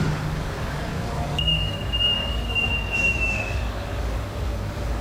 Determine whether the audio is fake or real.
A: fake